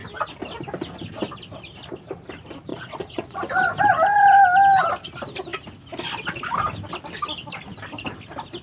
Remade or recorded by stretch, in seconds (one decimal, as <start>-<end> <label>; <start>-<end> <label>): 0.0-2.7 recorded; 2.7-3.4 remade; 3.4-8.6 recorded